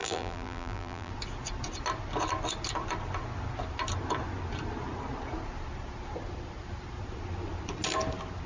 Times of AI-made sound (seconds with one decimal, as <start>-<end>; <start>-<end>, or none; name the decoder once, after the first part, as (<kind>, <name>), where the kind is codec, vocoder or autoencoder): 0.0-1.1 (vocoder, BigVGAN v2)

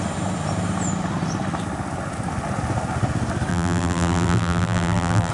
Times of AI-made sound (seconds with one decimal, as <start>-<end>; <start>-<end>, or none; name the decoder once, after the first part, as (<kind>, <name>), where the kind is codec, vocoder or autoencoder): 3.5-5.3 (vocoder, BigVGAN v2)

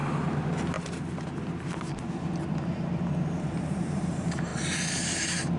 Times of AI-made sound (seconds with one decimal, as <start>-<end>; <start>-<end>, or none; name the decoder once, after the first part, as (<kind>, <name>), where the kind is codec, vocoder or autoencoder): 3.4-4.5 (vocoder, BigVGAN v2)

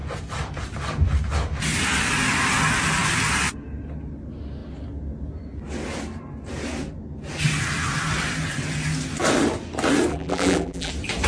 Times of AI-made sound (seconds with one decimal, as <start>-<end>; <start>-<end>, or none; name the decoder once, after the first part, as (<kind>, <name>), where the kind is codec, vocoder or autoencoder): 10.1-10.9 (vocoder, BigVGAN v2)

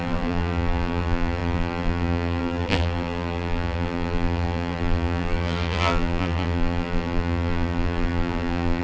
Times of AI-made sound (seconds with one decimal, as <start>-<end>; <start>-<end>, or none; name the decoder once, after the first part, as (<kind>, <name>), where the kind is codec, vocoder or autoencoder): 0.0-8.8 (vocoder, BigVGAN v2)